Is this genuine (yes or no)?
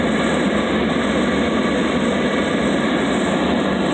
yes